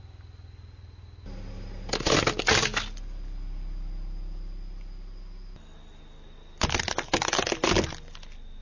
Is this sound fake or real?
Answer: real